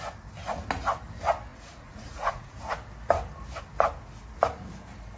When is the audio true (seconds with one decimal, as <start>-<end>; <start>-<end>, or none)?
0.0-1.5; 2.6-5.2